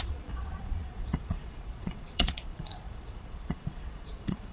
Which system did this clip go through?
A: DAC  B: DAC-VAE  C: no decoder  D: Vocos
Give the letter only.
D